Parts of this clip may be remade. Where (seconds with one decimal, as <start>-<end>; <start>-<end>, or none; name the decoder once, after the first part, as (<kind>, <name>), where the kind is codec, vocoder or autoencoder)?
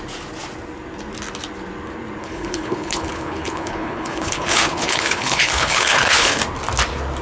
2.2-6.4 (codec, HILCodec)